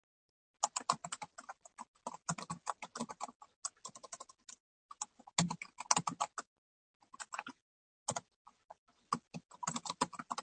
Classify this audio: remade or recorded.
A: recorded